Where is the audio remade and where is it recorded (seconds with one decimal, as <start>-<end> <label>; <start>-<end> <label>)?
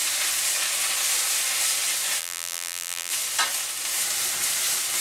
0.0-2.2 recorded; 2.2-3.1 remade; 3.1-5.0 recorded